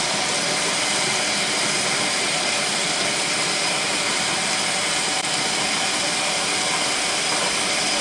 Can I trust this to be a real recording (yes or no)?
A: yes